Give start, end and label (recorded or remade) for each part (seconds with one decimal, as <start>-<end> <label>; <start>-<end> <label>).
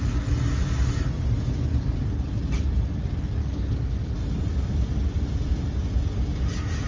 0.0-3.4 recorded; 3.4-4.1 remade; 4.1-6.9 recorded